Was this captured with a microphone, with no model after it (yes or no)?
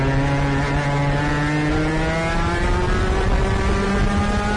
yes